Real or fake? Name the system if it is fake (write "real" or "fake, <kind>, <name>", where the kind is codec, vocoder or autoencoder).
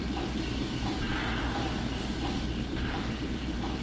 fake, vocoder, BigVGAN v2